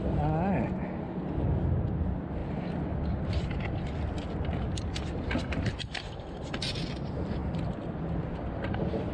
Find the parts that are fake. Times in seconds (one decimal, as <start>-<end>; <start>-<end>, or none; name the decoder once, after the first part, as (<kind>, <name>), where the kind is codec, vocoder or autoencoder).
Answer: none